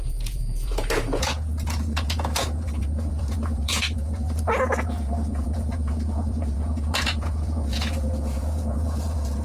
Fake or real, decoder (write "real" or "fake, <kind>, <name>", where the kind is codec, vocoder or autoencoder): fake, vocoder, Vocos